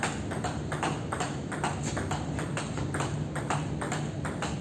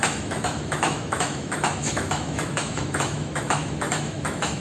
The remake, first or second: second